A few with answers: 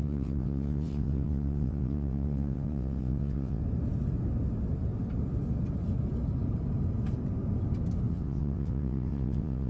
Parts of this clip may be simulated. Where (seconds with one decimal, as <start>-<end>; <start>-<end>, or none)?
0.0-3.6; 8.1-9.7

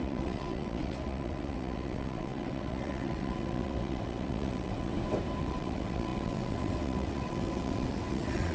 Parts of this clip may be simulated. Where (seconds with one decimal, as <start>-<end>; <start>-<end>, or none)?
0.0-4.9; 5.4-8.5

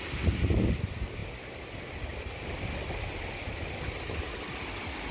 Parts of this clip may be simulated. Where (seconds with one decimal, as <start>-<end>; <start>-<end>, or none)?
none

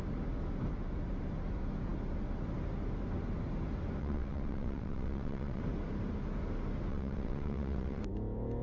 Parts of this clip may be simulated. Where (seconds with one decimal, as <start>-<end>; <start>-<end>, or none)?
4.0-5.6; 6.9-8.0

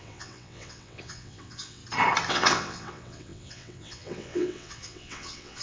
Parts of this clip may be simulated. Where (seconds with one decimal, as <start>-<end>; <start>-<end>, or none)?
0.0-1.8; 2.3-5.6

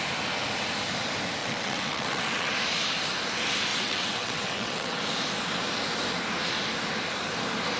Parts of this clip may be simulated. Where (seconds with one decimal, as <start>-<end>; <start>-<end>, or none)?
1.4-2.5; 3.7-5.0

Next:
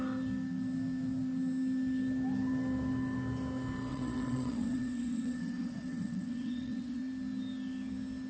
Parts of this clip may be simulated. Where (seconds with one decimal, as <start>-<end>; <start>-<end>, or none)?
3.9-7.0